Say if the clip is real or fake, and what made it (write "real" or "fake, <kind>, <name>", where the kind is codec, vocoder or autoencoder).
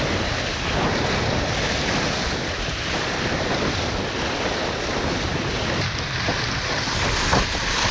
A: real